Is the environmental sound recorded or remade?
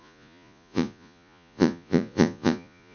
remade